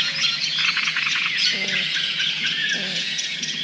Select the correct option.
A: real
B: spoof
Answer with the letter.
B